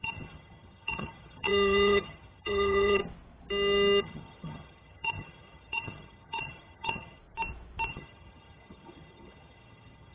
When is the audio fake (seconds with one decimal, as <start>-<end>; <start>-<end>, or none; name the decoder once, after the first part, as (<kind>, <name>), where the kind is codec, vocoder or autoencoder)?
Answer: 0.0-3.0 (vocoder, HiFi-GAN); 4.0-7.2; 7.9-10.1

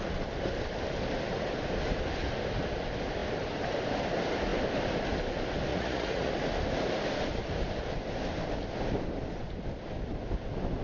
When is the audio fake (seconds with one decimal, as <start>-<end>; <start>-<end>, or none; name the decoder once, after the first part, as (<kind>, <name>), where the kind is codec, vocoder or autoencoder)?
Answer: 5.7-6.3 (vocoder, Vocos)

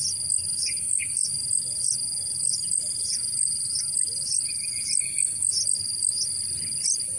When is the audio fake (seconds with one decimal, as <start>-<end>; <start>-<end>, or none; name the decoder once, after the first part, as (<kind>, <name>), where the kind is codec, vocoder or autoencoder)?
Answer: 0.4-4.7 (vocoder, BigVGAN v2)

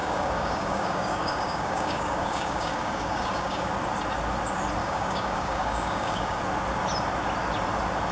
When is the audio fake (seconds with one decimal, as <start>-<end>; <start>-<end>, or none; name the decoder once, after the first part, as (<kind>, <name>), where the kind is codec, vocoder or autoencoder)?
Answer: 0.0-3.7 (codec, DAC); 4.8-6.4

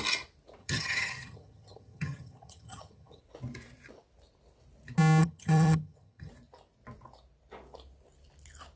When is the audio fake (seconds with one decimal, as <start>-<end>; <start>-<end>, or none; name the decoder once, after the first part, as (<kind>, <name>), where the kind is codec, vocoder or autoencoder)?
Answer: 0.6-3.2 (vocoder, HiFi-GAN); 5.2-6.3

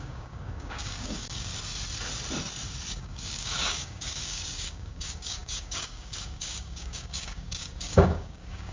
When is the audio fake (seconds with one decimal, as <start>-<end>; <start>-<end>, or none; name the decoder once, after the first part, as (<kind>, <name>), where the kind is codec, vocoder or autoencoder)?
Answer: 0.0-1.5 (codec, DAC); 2.9-8.7